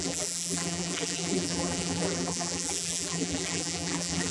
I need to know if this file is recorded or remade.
remade